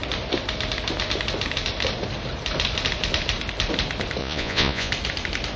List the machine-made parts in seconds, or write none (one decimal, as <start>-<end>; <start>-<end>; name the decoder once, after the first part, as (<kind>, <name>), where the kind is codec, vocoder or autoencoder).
4.2-4.9 (vocoder, Vocos)